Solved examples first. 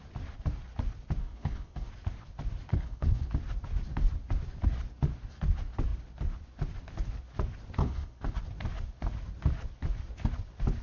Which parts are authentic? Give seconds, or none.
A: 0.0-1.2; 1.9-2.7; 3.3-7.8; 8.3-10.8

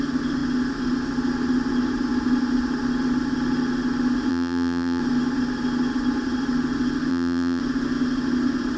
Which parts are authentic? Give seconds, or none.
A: 0.0-4.3; 5.0-7.1; 7.6-8.8

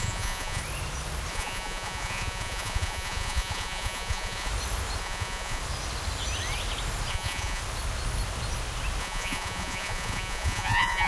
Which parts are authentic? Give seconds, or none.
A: 0.6-1.3; 4.5-5.0; 5.6-7.1; 7.6-9.0

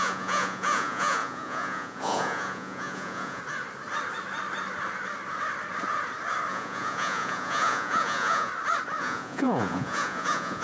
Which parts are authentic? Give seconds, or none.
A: 3.4-6.5; 8.5-9.0